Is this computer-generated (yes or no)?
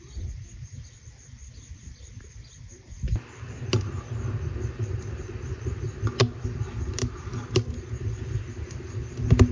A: no